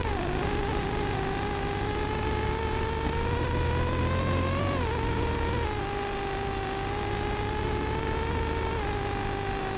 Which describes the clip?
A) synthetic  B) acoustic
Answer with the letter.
B